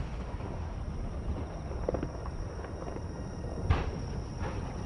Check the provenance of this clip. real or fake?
real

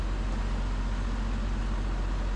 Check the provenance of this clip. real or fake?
real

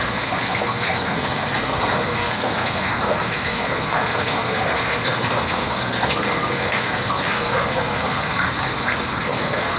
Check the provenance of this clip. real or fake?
fake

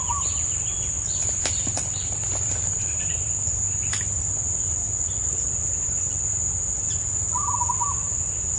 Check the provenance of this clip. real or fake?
real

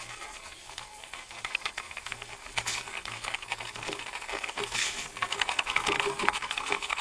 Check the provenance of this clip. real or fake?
fake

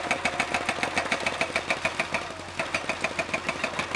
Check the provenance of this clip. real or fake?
real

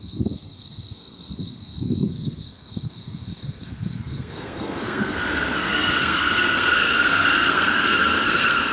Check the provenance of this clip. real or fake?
fake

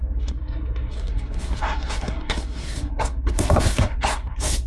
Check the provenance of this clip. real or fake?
fake